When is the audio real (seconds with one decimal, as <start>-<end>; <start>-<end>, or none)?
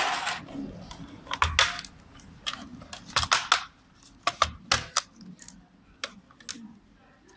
0.0-7.4